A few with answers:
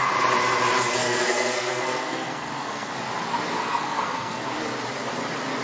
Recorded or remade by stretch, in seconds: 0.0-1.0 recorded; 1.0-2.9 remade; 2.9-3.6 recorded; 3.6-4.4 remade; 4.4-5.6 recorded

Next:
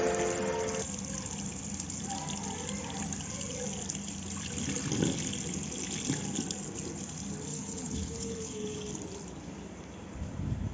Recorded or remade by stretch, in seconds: 0.0-7.5 recorded; 7.5-8.8 remade; 8.8-10.7 recorded

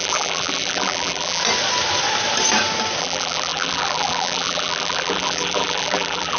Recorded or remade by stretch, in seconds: 0.0-1.4 remade; 1.4-3.0 recorded; 3.0-6.4 remade

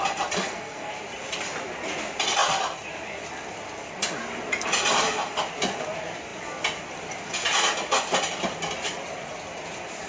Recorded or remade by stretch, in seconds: 0.0-0.4 recorded; 0.4-0.9 remade; 0.9-10.1 recorded